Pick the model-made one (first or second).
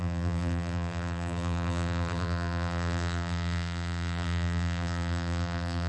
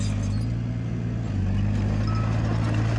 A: first